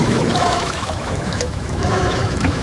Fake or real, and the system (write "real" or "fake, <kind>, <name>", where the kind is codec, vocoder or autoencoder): fake, autoencoder, DAC-VAE